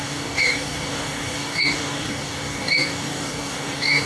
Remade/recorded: remade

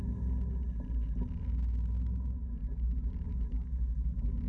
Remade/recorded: recorded